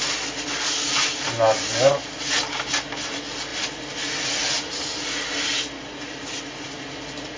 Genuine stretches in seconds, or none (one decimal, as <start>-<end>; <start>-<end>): 0.0-7.4